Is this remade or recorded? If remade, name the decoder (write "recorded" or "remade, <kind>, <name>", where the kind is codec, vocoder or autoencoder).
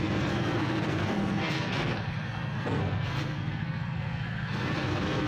remade, codec, SNAC